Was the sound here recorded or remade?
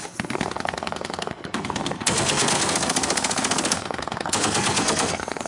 remade